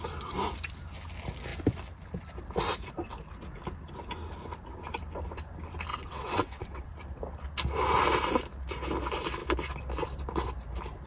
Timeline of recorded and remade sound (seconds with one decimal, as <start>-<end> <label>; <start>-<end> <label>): 0.0-5.9 recorded; 5.9-6.9 remade; 6.9-11.1 recorded